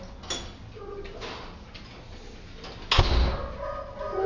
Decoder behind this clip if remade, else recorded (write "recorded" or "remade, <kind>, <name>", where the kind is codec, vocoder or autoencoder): recorded